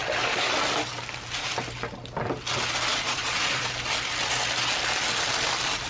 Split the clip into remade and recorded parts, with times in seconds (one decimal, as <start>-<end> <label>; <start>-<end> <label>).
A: 0.0-2.9 recorded; 2.9-3.7 remade; 3.7-5.9 recorded